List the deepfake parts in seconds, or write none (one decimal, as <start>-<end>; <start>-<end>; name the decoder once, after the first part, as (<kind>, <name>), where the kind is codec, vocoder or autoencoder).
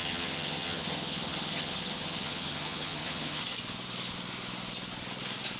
0.0-3.4 (vocoder, HiFi-GAN)